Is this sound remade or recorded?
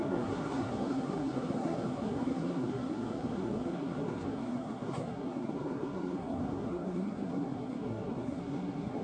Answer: remade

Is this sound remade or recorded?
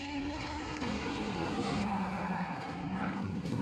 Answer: remade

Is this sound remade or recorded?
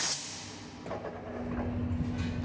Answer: recorded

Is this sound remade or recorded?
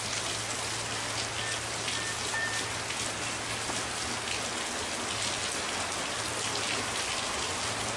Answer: recorded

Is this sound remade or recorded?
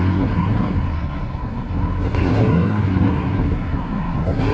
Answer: remade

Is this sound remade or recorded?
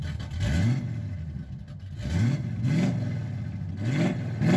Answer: recorded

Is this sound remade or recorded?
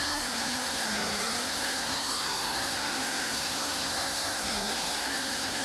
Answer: remade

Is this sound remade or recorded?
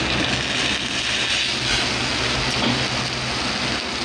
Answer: recorded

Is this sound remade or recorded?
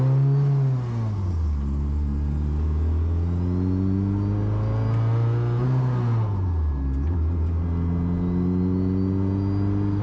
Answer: recorded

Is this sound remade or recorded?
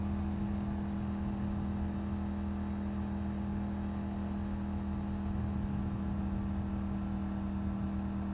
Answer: recorded